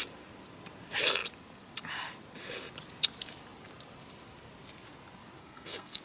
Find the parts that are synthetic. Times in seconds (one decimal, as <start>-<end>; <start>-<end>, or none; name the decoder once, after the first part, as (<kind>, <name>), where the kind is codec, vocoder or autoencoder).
5.4-6.0 (codec, SNAC)